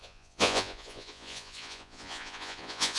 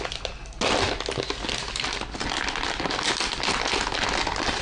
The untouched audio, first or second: second